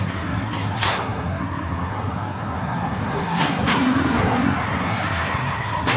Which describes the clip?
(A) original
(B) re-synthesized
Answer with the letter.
B